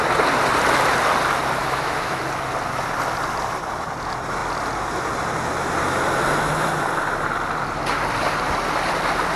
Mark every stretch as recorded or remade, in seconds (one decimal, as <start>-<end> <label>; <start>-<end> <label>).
0.0-1.6 recorded; 1.6-2.2 remade; 2.2-9.4 recorded